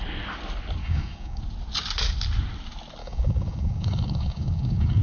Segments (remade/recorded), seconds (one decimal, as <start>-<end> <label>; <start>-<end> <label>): 0.0-0.8 recorded; 0.8-1.4 remade; 1.4-3.0 recorded; 3.0-5.0 remade